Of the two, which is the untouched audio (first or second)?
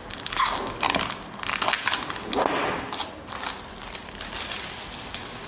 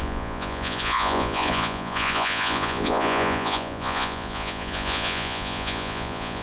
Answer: first